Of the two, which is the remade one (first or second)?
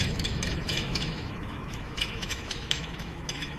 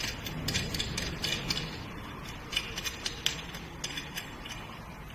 first